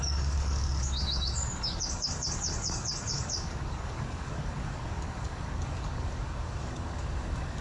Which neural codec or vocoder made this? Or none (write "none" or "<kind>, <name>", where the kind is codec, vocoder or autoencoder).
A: codec, DAC